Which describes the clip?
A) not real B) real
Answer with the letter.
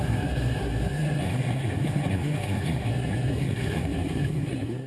A